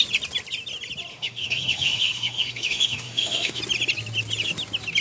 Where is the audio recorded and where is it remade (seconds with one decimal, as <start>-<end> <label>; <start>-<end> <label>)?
0.0-1.1 recorded; 1.1-3.6 remade; 3.6-5.0 recorded